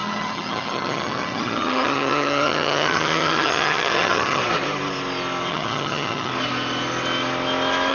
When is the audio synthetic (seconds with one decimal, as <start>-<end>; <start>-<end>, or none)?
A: 0.0-4.4; 5.5-6.3